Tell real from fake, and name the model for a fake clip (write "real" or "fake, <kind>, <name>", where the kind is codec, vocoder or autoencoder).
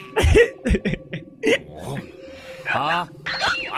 real